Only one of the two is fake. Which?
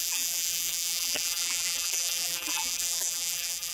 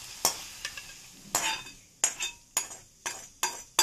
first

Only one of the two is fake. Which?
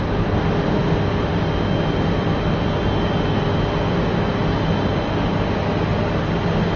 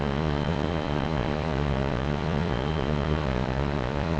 second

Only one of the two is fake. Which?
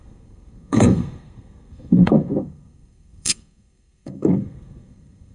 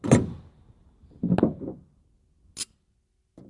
first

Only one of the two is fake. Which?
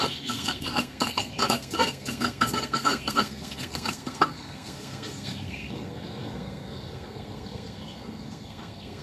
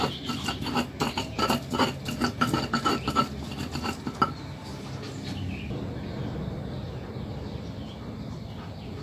first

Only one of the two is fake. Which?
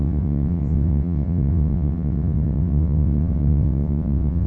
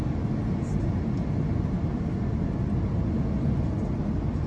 first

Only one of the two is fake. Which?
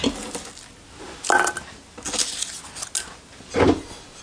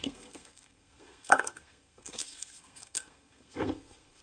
second